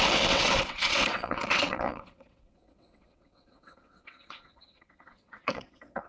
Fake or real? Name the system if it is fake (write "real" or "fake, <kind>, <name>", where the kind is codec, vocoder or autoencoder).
fake, vocoder, WaveNeXt